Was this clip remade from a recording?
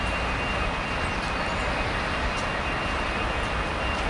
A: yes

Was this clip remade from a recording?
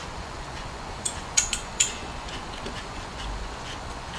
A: yes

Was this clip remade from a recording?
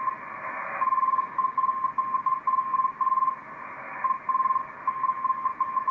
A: no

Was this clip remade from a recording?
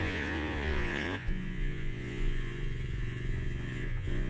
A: yes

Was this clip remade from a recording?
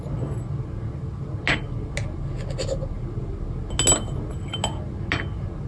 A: no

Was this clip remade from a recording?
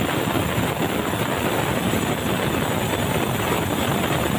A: no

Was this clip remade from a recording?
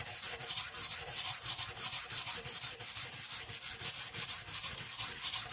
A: no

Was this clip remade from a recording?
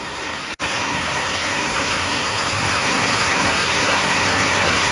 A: yes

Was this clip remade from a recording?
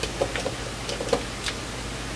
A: no